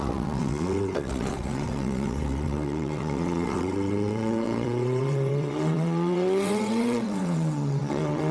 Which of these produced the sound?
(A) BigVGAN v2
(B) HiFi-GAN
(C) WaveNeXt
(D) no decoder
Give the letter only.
C